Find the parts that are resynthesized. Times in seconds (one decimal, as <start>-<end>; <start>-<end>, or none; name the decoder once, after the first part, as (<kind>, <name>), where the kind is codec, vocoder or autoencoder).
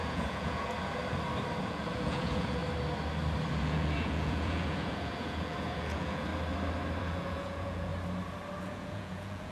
0.0-1.0 (vocoder, Vocos); 1.6-2.6; 3.5-6.3; 7.0-7.9; 8.6-9.5